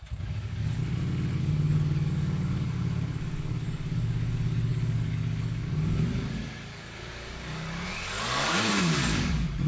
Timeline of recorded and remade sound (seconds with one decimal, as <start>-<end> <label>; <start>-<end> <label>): 0.0-0.8 remade; 0.8-1.4 recorded; 1.4-9.7 remade